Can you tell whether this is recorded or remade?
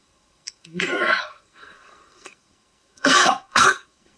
remade